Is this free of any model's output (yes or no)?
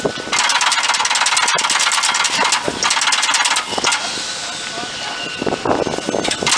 yes